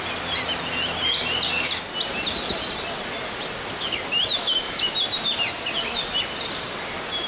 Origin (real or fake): real